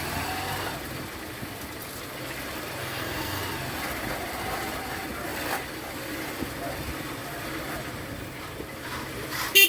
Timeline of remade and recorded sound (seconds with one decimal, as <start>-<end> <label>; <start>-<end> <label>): 0.0-2.8 recorded; 2.8-3.4 remade; 3.4-9.7 recorded